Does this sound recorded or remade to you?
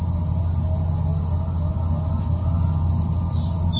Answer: recorded